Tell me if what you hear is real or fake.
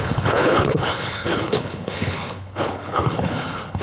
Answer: fake